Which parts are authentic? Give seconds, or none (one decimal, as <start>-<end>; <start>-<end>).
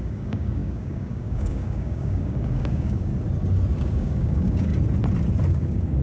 3.1-3.8; 4.7-5.5